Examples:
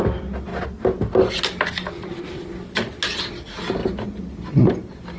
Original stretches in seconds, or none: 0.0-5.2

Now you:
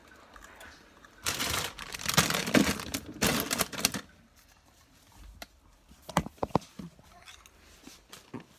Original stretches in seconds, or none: 2.4-4.1